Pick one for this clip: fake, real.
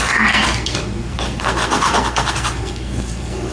fake